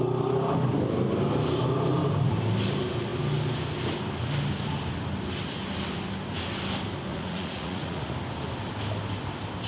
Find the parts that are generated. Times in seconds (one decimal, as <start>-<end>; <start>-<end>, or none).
7.1-8.1